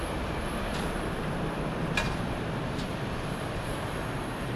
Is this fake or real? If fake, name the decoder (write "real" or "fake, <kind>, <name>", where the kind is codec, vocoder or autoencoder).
fake, vocoder, BigVGAN v2